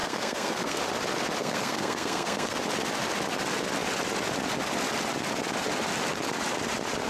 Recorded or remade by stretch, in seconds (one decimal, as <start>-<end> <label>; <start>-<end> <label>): 0.0-0.8 remade; 0.8-1.4 recorded; 1.4-2.6 remade; 2.6-7.1 recorded